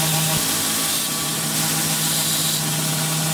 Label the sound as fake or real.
real